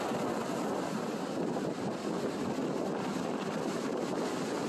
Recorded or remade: recorded